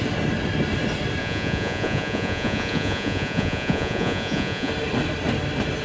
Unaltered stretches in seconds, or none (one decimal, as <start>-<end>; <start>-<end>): 0.0-1.2; 4.7-5.8